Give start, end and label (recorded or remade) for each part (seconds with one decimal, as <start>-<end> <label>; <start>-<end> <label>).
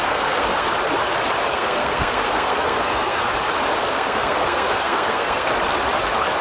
0.0-0.7 remade; 0.7-1.5 recorded; 1.5-3.3 remade; 3.3-3.9 recorded; 3.9-5.5 remade; 5.5-6.4 recorded